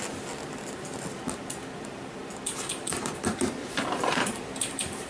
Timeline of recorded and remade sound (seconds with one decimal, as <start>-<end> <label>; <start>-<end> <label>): 0.0-3.6 recorded; 3.6-5.1 remade